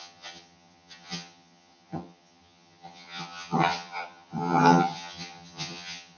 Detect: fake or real fake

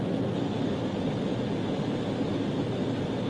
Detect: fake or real real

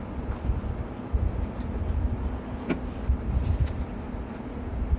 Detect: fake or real real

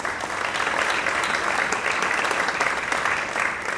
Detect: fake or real real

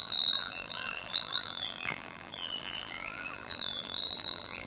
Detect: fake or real fake